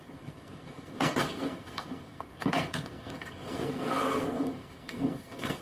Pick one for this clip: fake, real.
fake